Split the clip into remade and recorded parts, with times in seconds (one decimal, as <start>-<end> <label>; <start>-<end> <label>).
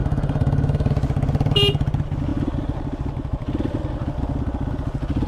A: 0.0-0.9 remade; 0.9-5.3 recorded